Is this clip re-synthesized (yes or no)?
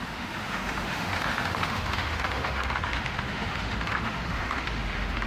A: yes